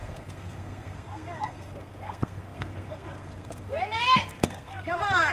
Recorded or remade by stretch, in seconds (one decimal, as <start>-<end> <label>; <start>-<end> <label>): 0.0-5.3 remade